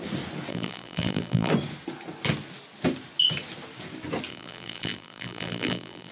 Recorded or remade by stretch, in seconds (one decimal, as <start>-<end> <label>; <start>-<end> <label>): 0.0-0.5 recorded; 0.5-1.5 remade; 1.5-4.3 recorded; 4.3-6.1 remade